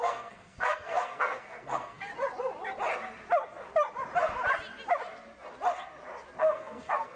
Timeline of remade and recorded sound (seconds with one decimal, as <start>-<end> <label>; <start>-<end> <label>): 0.0-2.1 remade; 2.1-6.4 recorded; 6.4-7.2 remade